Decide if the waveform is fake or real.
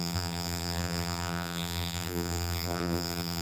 fake